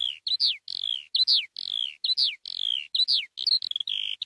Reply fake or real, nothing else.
real